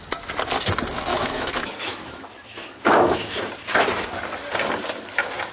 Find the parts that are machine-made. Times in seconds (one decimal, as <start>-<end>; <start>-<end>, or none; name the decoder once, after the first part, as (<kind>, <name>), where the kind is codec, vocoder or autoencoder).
1.1-3.5 (autoencoder, DAC-VAE)